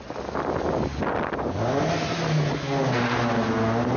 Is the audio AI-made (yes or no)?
no